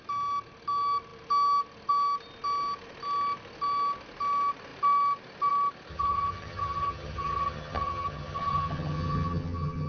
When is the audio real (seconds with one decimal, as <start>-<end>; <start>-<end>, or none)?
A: 0.0-5.9